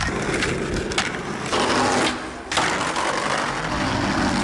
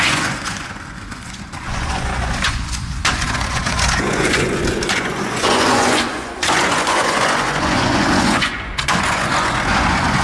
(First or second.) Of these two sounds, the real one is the first